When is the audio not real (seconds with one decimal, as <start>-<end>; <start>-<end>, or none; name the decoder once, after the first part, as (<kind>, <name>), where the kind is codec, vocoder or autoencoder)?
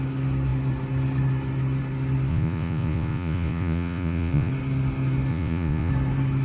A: 2.3-4.5 (vocoder, Vocos); 5.3-5.9